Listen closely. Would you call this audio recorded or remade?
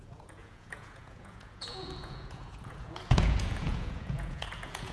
remade